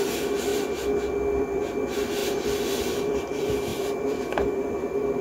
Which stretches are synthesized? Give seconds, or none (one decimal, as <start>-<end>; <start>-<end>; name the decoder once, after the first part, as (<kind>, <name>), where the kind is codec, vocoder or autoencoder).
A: 0.0-0.5 (vocoder, BigVGAN v2); 1.4-5.2